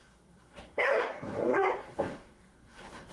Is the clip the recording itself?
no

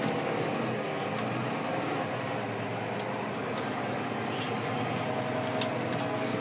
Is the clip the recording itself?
yes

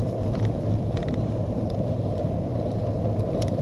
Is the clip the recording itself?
yes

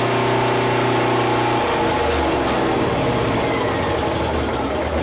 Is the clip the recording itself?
yes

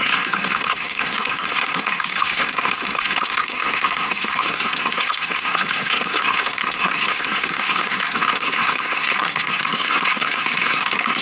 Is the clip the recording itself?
no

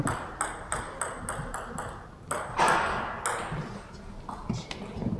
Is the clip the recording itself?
yes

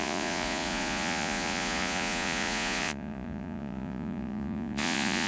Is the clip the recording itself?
no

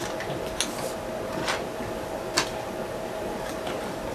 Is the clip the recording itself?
yes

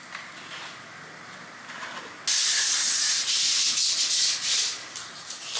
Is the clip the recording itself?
yes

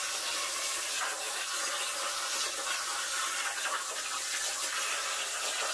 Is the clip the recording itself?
yes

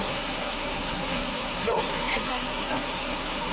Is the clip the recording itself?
no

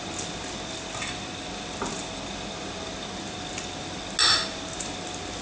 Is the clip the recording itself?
yes